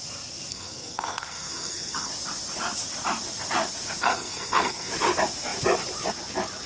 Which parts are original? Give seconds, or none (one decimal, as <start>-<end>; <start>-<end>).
0.0-0.5; 2.1-4.0; 4.9-6.7